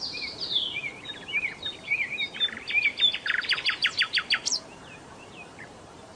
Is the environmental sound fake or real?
fake